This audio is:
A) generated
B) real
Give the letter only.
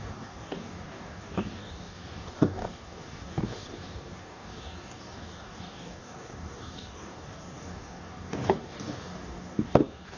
A